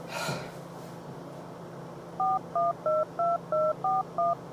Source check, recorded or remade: recorded